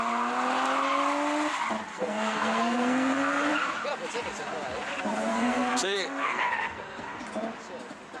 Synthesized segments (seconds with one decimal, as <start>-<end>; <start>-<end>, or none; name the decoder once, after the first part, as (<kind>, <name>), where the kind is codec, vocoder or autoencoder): 1.9-3.5 (codec, SNAC); 5.3-7.2